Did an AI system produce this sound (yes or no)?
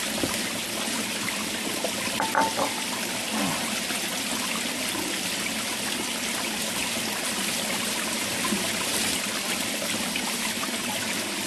no